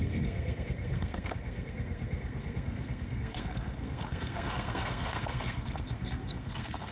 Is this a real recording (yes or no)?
no